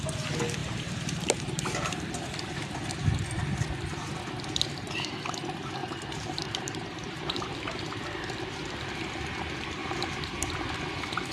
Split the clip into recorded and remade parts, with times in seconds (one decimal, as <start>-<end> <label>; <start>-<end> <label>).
0.0-0.6 recorded; 0.6-2.1 remade; 2.1-5.8 recorded; 5.8-8.9 remade; 8.9-9.8 recorded; 9.8-10.5 remade; 10.5-11.3 recorded